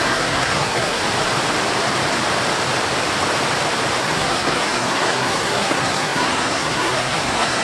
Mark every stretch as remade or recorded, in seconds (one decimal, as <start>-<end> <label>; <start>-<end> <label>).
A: 0.0-1.0 remade; 1.0-4.0 recorded; 4.0-7.6 remade